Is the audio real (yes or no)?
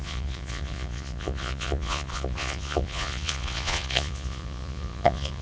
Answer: no